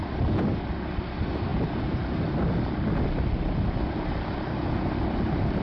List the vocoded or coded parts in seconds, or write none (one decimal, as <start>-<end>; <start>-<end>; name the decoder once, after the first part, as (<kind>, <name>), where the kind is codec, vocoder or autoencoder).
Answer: none